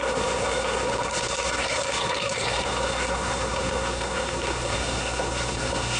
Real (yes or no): no